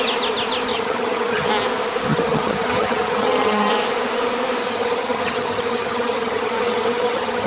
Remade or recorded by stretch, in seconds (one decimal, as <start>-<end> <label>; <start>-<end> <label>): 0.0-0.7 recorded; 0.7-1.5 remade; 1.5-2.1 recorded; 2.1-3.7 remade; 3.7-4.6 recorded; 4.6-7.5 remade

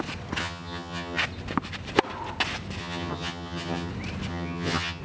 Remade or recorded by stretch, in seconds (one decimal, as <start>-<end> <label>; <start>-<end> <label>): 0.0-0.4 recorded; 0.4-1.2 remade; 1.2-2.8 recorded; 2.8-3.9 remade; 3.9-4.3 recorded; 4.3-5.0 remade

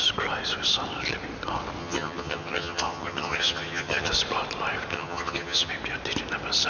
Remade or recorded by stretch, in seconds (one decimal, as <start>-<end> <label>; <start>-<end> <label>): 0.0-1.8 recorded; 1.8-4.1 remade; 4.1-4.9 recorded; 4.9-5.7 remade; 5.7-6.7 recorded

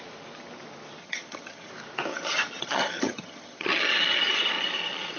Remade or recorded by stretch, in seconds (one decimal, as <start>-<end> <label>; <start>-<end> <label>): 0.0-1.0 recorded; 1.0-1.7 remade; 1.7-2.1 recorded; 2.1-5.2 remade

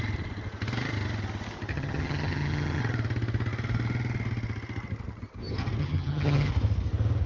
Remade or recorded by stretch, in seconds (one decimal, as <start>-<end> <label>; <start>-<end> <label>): 0.0-1.7 recorded; 1.7-2.8 remade; 2.8-5.8 recorded; 5.8-6.5 remade; 6.5-7.3 recorded

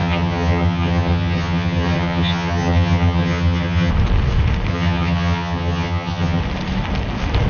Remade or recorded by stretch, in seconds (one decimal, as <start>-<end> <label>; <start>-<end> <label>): 0.0-3.9 remade; 3.9-4.7 recorded; 4.7-6.4 remade; 6.4-7.5 recorded